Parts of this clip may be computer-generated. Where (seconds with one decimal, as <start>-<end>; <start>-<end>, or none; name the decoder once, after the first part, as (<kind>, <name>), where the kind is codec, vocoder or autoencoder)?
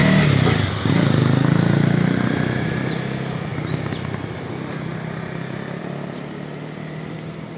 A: none